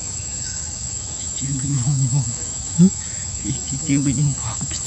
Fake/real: fake